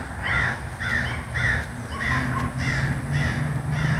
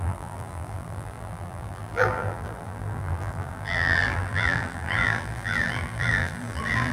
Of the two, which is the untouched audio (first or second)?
first